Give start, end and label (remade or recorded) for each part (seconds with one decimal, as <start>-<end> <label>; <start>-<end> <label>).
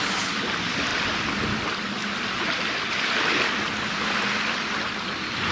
0.0-5.5 recorded